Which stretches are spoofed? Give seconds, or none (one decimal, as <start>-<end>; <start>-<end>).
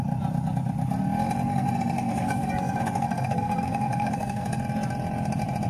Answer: 1.5-4.6